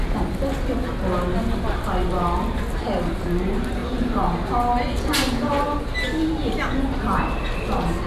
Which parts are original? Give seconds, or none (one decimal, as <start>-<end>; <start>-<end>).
0.0-8.1